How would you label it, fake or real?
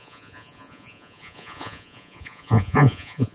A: fake